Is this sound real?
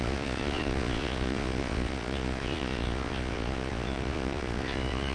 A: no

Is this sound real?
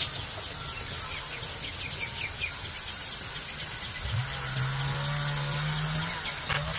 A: yes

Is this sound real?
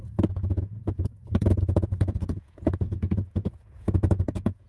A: no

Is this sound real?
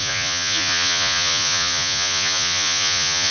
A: no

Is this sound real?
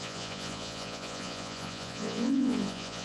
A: no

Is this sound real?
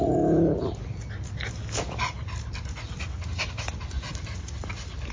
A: yes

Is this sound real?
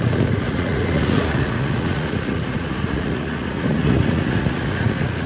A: no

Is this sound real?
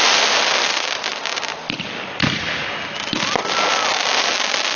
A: yes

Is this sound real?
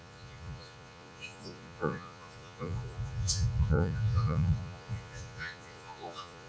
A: no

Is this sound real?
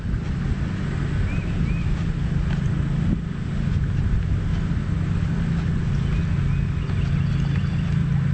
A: yes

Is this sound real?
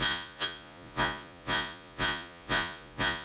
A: no